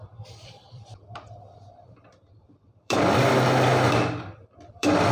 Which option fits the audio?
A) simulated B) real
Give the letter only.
A